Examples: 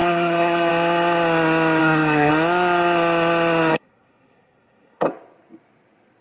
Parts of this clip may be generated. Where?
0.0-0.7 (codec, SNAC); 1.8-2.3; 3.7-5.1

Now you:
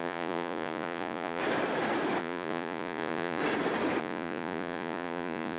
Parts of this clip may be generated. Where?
0.0-1.4 (vocoder, Vocos); 2.2-3.4; 4.0-5.6

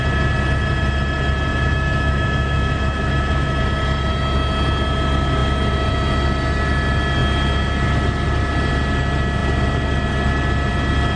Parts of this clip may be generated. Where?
1.5-3.6 (autoencoder, DAC-VAE)

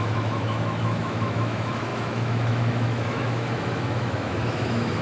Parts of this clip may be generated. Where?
0.0-5.0 (autoencoder, DAC-VAE)

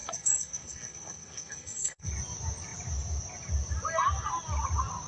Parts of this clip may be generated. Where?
0.0-2.1 (codec, SNAC)

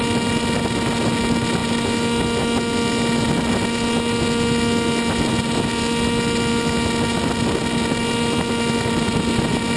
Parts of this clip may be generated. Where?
none